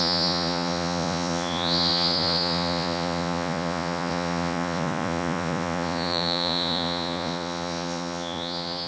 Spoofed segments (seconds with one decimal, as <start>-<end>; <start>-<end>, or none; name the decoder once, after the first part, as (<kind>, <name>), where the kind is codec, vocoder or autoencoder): 0.0-8.9 (vocoder, Vocos)